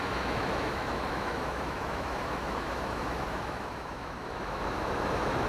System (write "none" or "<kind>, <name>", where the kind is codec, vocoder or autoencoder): autoencoder, DAC-VAE